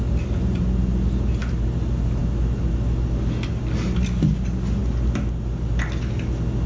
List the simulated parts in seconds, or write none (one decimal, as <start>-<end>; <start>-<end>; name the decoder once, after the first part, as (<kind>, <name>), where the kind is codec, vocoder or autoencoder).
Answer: none